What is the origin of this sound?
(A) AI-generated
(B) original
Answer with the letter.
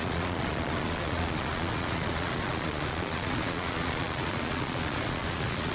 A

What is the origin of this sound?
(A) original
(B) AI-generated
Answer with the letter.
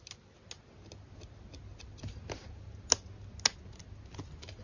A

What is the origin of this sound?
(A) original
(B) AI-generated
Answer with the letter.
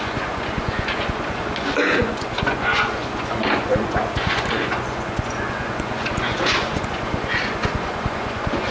B